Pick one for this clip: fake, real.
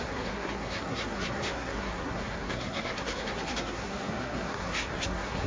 fake